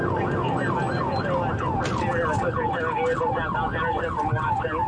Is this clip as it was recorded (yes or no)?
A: yes